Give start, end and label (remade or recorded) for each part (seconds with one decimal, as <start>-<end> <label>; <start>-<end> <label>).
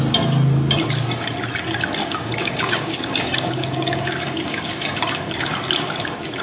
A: 0.0-2.0 recorded; 2.0-5.5 remade; 5.5-6.4 recorded